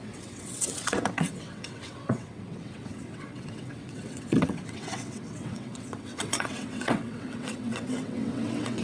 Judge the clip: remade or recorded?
remade